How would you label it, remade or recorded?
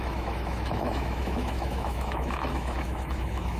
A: remade